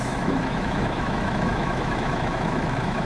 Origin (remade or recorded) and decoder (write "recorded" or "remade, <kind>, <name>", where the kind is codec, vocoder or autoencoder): remade, autoencoder, DAC-VAE